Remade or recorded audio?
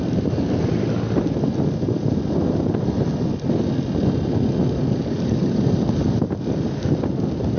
recorded